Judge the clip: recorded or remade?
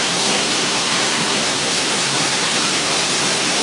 remade